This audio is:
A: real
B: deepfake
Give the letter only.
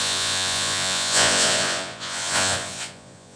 B